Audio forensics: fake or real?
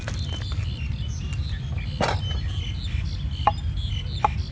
real